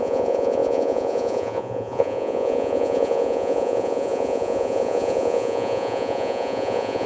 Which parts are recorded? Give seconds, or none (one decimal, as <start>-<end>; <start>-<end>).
none